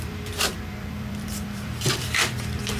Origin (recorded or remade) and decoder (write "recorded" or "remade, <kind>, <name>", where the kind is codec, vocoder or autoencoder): remade, vocoder, BigVGAN v2